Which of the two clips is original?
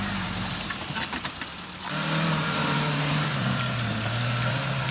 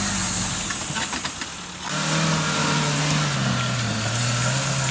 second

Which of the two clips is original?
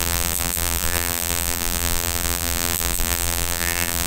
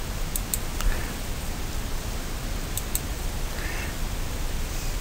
second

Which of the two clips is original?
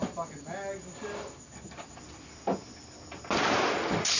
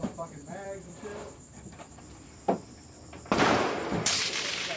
first